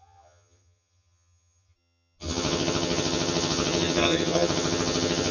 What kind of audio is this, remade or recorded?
remade